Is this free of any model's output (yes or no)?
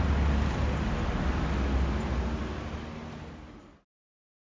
yes